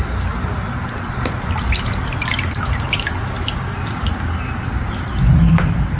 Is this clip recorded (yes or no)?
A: yes